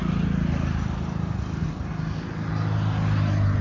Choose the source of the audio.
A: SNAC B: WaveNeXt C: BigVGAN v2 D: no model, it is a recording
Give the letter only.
D